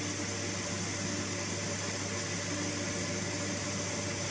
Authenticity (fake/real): real